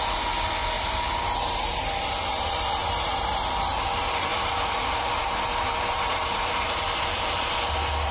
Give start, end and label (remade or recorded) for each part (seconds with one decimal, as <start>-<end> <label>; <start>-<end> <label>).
0.0-0.6 recorded; 0.6-1.7 remade; 1.7-2.4 recorded; 2.4-3.3 remade; 3.3-4.3 recorded; 4.3-7.5 remade; 7.5-8.1 recorded